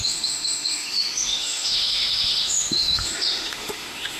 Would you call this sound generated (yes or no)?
yes